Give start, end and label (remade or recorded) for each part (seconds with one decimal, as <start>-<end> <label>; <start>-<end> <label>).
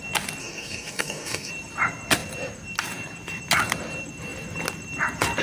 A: 0.0-0.4 recorded; 0.4-1.5 remade; 1.5-5.4 recorded